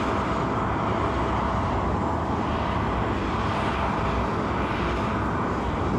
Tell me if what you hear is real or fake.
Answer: real